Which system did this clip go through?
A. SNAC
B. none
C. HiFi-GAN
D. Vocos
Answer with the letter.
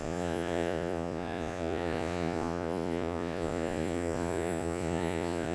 D